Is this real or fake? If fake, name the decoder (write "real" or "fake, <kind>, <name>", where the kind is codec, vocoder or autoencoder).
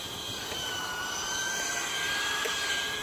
real